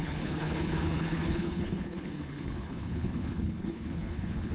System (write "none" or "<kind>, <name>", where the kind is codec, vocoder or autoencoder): codec, HILCodec